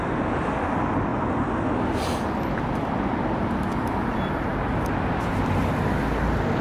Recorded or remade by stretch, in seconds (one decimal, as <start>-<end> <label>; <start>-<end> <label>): 0.0-4.5 recorded; 4.5-5.3 remade; 5.3-6.6 recorded